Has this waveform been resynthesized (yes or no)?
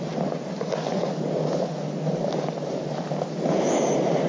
no